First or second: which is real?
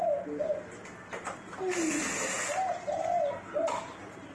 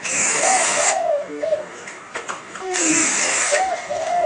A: first